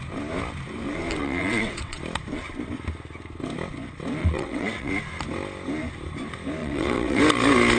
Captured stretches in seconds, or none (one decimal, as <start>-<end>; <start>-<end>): 0.0-1.2; 2.0-4.2; 4.9-6.6; 7.2-7.8